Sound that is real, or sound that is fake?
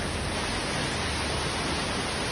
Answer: real